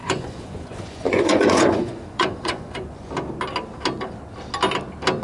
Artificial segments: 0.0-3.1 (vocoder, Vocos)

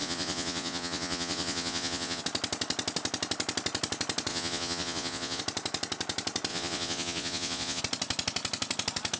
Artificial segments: 0.0-2.2 (vocoder, Vocos); 4.3-5.4; 6.5-7.8

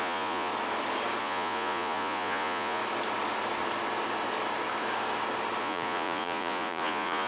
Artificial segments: 0.0-0.5 (vocoder, Vocos); 1.2-2.8; 5.6-7.3